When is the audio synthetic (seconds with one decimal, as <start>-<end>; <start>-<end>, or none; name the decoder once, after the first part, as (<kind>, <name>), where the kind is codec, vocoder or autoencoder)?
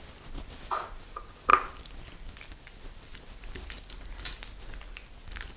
none